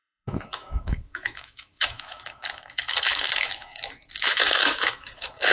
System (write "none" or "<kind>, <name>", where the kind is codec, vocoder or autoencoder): autoencoder, DAC-VAE